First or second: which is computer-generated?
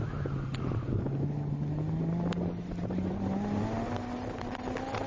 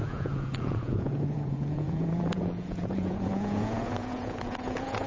second